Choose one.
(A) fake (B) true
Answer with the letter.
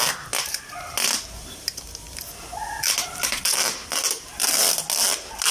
B